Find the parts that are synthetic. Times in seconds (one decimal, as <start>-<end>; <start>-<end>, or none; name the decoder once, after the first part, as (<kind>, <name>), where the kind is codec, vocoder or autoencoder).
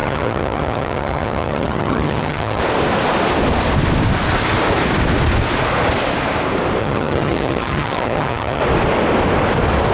0.0-2.6 (vocoder, HiFi-GAN); 6.8-8.6